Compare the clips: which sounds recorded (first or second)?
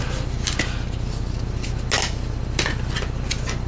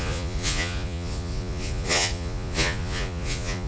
first